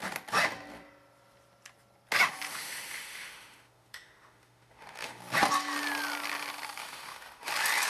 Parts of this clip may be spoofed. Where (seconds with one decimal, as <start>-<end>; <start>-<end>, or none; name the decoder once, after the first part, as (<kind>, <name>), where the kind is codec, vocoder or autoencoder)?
2.5-5.2 (autoencoder, DAC-VAE); 6.8-7.5